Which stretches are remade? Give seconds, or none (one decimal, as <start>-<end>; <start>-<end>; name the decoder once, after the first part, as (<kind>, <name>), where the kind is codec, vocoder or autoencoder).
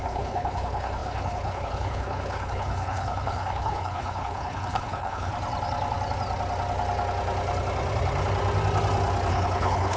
0.0-5.3 (codec, HILCodec); 9.3-10.0